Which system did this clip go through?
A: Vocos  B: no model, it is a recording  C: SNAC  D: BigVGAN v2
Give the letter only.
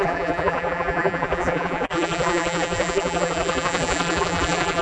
D